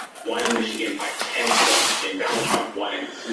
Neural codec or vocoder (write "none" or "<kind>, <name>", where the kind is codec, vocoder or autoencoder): vocoder, BigVGAN v2